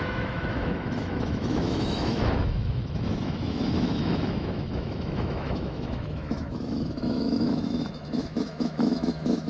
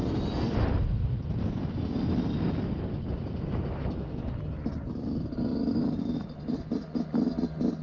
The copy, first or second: first